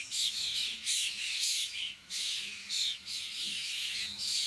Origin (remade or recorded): remade